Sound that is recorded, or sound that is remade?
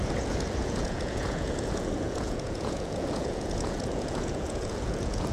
remade